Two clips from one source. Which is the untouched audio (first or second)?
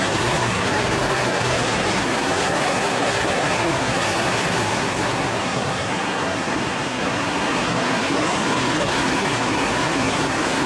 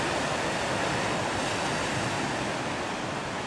second